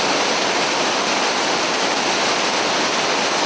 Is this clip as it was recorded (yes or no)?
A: yes